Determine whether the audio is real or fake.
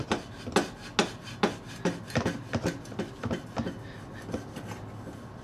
real